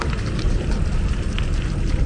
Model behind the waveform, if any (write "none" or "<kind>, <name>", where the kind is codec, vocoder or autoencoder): none